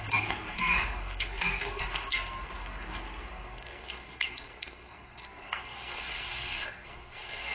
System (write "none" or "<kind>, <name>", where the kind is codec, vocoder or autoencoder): codec, SNAC